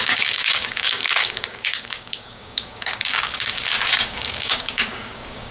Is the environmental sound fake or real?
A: fake